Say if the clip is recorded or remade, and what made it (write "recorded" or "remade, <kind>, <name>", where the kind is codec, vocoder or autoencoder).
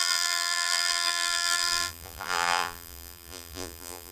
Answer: remade, vocoder, BigVGAN v2